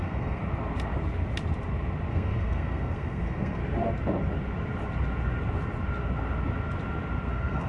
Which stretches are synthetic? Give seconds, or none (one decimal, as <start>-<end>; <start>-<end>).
0.0-0.4; 2.1-3.6; 7.3-7.7